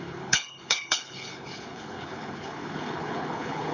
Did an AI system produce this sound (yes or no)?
yes